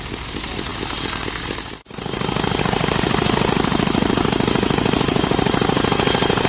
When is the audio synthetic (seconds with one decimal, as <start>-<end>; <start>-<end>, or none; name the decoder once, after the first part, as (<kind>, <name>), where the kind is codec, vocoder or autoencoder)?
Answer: none